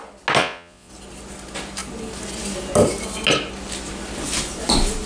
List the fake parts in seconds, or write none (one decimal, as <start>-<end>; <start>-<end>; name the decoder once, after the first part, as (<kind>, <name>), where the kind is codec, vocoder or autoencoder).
0.4-0.9 (vocoder, Vocos)